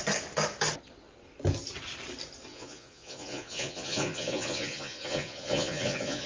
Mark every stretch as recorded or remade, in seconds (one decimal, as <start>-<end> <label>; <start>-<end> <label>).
0.0-2.5 recorded; 2.5-6.3 remade

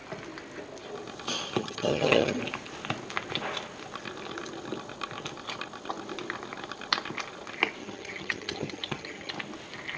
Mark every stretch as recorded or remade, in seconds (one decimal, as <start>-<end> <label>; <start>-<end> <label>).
0.0-1.6 recorded; 1.6-2.4 remade; 2.4-7.8 recorded; 7.8-9.3 remade; 9.3-10.0 recorded

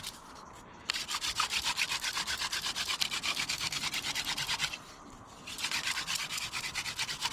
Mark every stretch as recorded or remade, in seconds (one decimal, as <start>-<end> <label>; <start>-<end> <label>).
0.0-3.3 recorded; 3.3-3.8 remade; 3.8-7.3 recorded

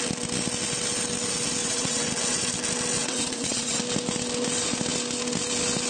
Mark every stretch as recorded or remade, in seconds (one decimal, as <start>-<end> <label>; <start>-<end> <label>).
0.0-1.6 recorded; 1.6-2.1 remade; 2.1-3.0 recorded; 3.0-3.8 remade; 3.8-5.9 recorded